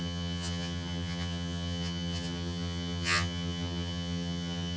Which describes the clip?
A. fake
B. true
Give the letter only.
A